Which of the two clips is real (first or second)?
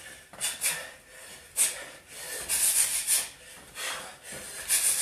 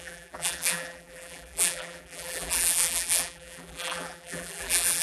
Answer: first